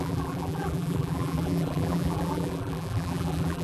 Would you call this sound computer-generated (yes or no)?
yes